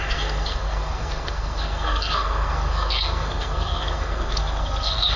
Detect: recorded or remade remade